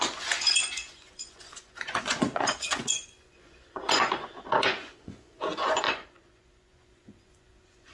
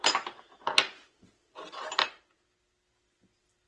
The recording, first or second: second